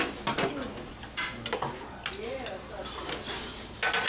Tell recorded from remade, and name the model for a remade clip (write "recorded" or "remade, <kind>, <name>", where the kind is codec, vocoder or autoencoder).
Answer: recorded